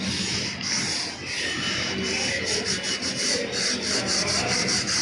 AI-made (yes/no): no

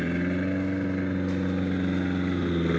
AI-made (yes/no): no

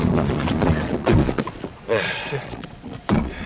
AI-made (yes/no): yes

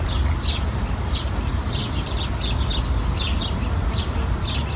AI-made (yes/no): no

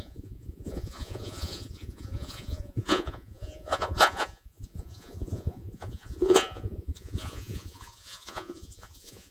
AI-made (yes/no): yes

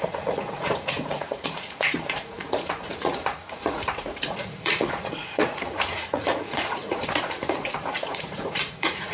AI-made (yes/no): yes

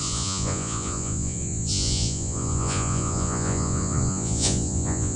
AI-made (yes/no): yes